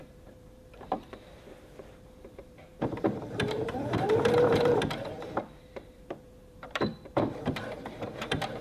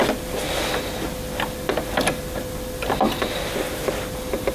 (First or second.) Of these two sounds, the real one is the second